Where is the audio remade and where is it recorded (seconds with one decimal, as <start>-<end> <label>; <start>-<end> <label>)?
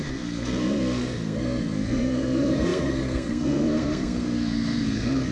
0.0-5.3 remade